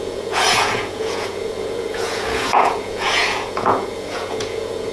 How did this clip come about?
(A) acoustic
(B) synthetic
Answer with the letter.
B